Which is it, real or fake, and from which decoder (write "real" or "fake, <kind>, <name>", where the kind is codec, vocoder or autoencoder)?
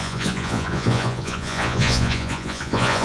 fake, vocoder, Vocos